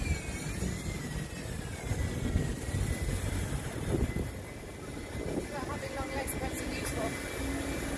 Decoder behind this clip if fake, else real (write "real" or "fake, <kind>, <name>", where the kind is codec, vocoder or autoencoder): real